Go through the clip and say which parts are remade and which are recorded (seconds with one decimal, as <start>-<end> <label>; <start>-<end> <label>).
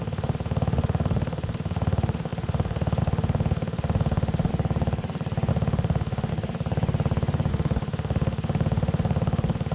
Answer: 0.0-4.5 remade; 4.5-5.5 recorded; 5.5-6.3 remade; 6.3-7.5 recorded; 7.5-9.7 remade